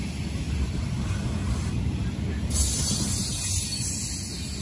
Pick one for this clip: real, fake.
real